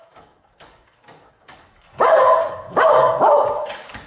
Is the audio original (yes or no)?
no